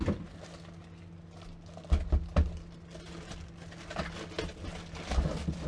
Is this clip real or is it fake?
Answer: real